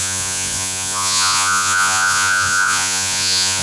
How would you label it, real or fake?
fake